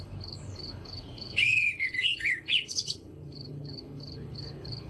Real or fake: fake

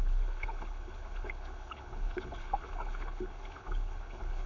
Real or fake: fake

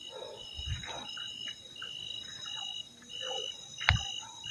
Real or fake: real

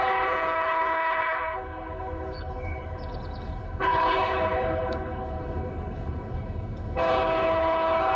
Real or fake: fake